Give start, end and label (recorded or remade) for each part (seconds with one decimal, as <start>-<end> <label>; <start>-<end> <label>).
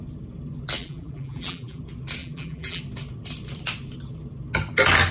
0.0-0.8 recorded; 0.8-1.8 remade; 1.8-2.2 recorded; 2.2-2.8 remade; 2.8-5.1 recorded